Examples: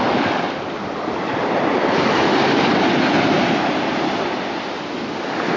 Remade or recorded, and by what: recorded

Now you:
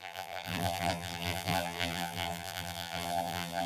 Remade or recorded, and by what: remade, vocoder, BigVGAN v2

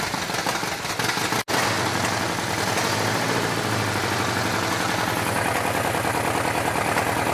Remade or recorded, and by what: recorded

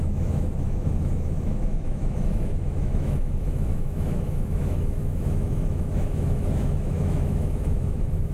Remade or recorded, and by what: remade, autoencoder, DAC-VAE